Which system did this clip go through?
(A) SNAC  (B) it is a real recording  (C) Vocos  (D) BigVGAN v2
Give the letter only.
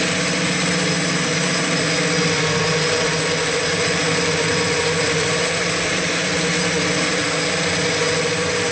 B